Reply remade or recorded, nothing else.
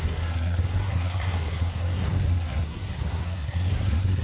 remade